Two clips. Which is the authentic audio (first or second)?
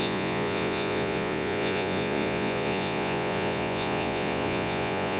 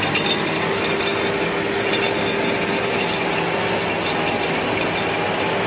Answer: second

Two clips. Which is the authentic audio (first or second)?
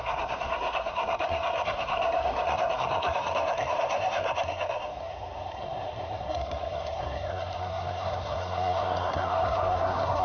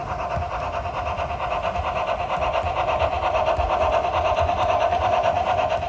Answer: second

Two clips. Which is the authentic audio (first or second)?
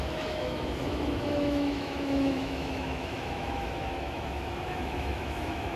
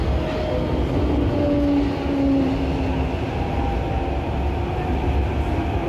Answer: second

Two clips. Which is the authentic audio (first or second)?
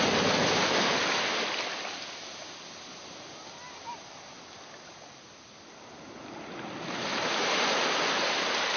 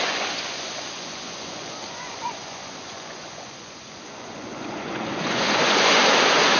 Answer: first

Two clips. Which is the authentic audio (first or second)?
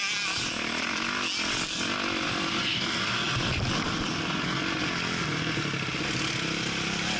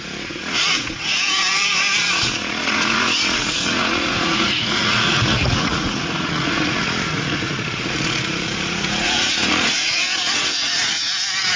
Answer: first